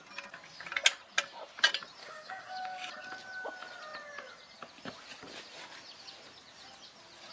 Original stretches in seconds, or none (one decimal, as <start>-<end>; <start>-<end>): 0.0-2.0; 2.9-7.3